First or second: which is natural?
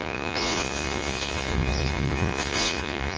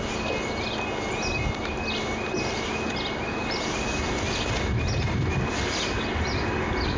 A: second